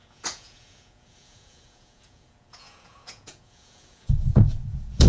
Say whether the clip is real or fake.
fake